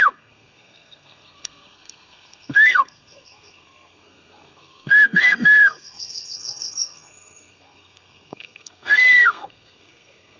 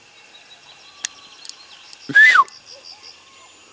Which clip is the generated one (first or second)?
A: first